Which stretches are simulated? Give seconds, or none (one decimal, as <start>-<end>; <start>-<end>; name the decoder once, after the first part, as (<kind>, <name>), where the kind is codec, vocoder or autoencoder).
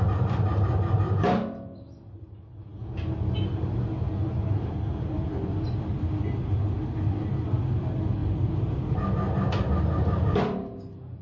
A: none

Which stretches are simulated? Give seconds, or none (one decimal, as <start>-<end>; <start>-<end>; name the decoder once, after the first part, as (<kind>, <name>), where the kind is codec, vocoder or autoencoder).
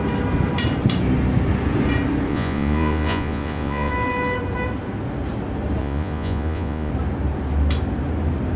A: 2.3-3.9 (vocoder, Vocos); 5.8-6.9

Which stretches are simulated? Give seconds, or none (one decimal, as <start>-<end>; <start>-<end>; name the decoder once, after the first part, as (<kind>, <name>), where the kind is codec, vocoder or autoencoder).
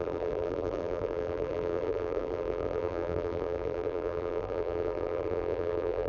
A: 0.0-6.1 (vocoder, BigVGAN v2)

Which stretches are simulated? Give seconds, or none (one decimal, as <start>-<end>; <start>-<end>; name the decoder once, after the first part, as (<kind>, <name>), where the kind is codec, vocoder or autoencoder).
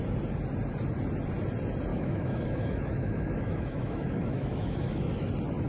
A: 1.9-5.3 (autoencoder, DAC-VAE)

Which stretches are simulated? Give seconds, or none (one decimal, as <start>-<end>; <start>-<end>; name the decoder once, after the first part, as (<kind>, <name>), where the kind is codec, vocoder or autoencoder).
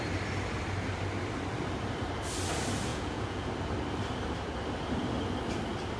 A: 2.9-3.5 (vocoder, Vocos)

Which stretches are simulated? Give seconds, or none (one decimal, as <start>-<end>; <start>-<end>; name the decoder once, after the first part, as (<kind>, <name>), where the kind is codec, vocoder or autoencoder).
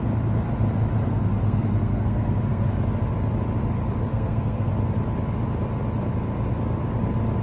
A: 1.1-2.7 (codec, SNAC); 4.1-4.7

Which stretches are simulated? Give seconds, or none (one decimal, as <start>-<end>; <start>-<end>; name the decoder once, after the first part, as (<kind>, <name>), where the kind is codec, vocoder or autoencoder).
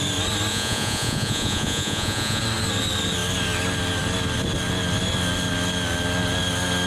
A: 0.5-2.4 (vocoder, Vocos)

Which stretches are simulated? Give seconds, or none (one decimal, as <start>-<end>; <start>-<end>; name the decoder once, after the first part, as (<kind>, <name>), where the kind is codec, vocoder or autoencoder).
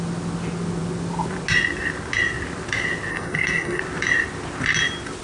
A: 3.1-3.8 (codec, SNAC)